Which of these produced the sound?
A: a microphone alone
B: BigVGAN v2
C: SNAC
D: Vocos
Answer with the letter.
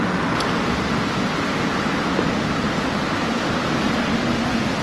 A